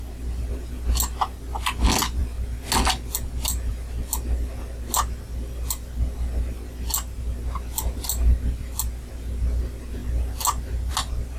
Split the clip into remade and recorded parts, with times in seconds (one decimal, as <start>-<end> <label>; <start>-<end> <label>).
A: 0.0-11.4 recorded